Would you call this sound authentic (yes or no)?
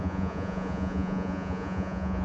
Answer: no